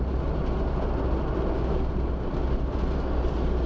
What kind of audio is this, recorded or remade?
recorded